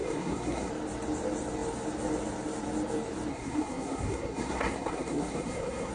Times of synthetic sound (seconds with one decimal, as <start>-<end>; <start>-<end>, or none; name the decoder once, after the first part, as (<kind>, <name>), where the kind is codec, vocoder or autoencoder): 0.0-0.7 (codec, SNAC); 3.3-5.9